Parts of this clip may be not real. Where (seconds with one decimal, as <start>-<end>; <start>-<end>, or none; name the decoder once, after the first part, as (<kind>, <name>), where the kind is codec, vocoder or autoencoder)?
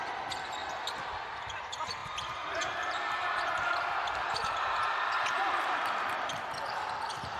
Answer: 0.0-0.6 (vocoder, BigVGAN v2); 1.3-7.4